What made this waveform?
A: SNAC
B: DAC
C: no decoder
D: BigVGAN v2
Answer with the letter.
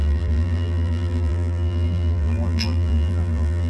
D